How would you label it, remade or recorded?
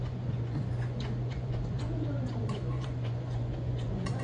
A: remade